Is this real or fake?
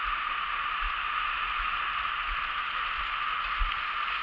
real